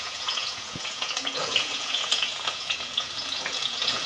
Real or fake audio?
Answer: fake